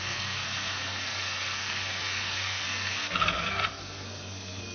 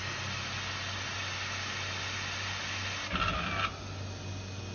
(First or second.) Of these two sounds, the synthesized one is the first